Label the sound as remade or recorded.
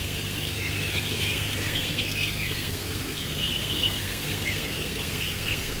remade